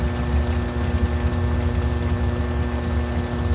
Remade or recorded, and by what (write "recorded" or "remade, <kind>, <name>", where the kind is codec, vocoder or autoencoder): recorded